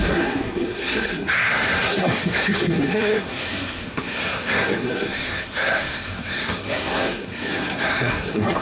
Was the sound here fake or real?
fake